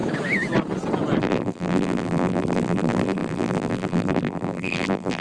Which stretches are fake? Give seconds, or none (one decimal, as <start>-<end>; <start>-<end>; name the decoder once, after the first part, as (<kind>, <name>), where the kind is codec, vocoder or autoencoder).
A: 1.2-5.2 (vocoder, BigVGAN v2)